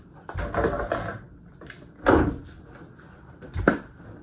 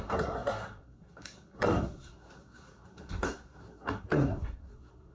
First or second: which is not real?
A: second